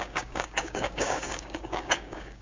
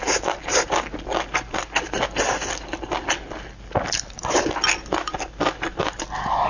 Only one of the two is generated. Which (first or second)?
first